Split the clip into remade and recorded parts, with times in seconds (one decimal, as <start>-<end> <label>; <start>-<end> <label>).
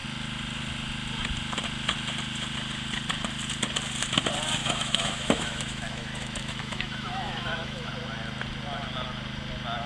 0.0-4.6 recorded; 4.6-7.9 remade; 7.9-9.9 recorded